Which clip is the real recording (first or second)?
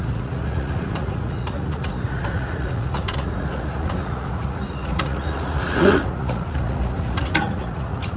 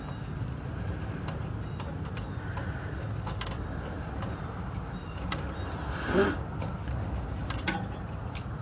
second